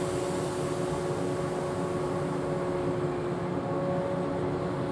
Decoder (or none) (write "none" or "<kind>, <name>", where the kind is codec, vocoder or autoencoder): none